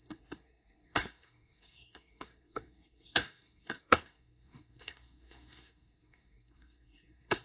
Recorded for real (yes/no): no